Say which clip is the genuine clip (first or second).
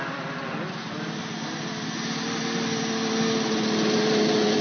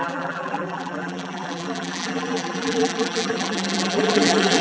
first